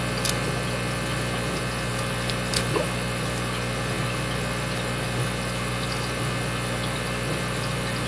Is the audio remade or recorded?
recorded